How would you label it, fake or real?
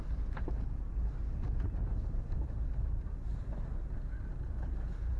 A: fake